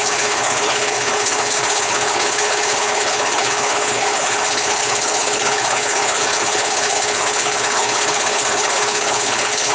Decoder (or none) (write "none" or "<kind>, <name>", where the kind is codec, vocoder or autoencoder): codec, HILCodec